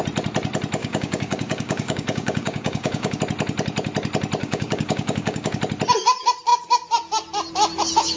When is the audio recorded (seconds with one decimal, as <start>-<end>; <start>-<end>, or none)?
0.0-0.8; 3.2-4.4; 5.6-8.2